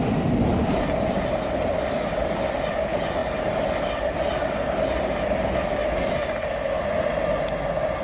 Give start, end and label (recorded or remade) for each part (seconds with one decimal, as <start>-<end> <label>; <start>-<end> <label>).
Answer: 0.0-8.0 recorded